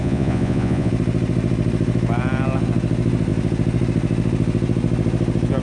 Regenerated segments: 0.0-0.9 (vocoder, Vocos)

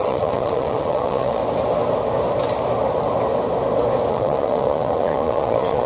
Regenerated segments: 0.0-1.4 (vocoder, Vocos); 4.1-5.9

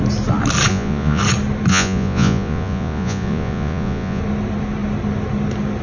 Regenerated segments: 0.7-1.2 (vocoder, Vocos); 1.7-4.2